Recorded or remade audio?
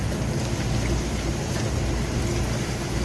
recorded